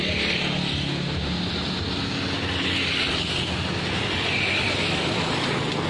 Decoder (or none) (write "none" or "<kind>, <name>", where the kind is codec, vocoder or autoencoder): none